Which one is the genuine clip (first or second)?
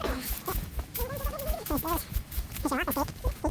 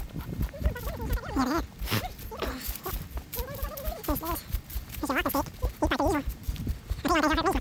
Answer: second